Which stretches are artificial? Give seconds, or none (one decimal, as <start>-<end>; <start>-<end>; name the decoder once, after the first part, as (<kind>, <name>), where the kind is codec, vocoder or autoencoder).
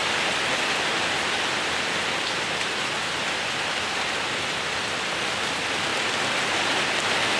none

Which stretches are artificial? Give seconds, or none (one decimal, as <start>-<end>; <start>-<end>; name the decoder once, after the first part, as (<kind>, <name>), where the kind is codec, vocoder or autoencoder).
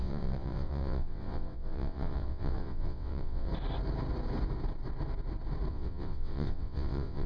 0.0-3.5 (vocoder, WaveNeXt); 5.7-7.3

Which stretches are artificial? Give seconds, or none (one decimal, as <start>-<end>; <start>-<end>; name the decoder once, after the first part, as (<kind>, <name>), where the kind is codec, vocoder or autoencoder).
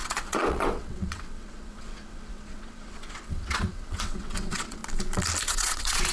0.0-4.8 (vocoder, WaveNeXt); 5.5-6.1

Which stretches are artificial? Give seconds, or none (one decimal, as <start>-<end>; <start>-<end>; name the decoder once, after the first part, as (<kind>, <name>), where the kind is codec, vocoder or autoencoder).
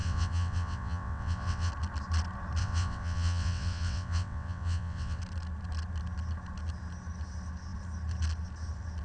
0.0-1.7 (vocoder, WaveNeXt); 2.6-5.2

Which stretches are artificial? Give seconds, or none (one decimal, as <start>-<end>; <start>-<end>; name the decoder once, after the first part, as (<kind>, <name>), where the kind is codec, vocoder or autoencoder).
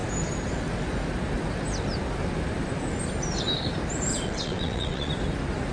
4.1-5.1 (vocoder, WaveNeXt)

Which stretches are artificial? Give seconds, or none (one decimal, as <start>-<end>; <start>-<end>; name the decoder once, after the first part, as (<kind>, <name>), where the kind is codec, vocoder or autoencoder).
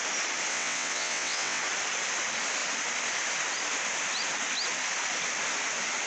0.5-1.6 (vocoder, WaveNeXt)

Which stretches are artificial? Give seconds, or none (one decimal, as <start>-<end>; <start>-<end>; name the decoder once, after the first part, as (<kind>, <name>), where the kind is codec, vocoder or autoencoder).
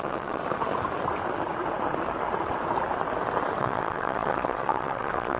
0.0-0.4 (vocoder, WaveNeXt); 3.6-5.4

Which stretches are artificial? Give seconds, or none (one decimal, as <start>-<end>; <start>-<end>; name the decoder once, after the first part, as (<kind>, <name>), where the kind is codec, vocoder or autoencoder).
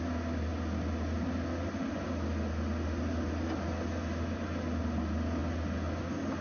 none